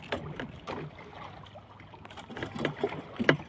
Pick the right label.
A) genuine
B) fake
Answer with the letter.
A